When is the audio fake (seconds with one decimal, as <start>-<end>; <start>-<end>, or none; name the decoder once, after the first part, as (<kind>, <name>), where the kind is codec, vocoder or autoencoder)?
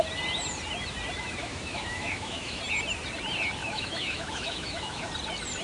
1.4-2.6 (autoencoder, DAC-VAE); 3.6-5.1